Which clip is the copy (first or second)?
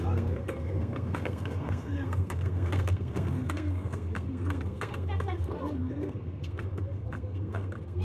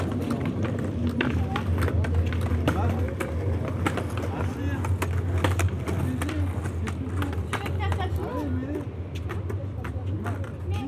first